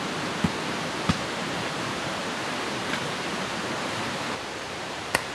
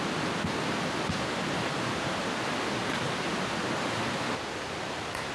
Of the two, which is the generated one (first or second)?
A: first